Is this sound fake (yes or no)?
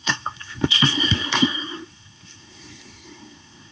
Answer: yes